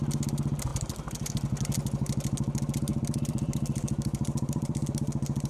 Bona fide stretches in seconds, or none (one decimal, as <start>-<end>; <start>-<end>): 0.0-0.7; 1.3-2.9; 4.9-5.5